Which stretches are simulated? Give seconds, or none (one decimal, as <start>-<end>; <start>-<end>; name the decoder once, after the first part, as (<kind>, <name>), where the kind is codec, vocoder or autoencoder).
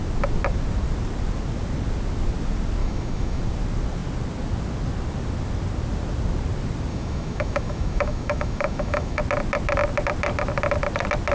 2.8-3.4 (autoencoder, DAC-VAE); 6.9-9.2